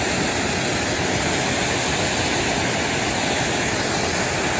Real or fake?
real